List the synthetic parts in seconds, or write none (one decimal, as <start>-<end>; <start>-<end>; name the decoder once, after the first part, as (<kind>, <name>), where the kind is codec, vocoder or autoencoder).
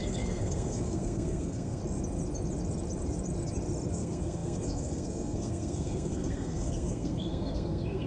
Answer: 0.0-1.8 (codec, SNAC); 3.9-8.1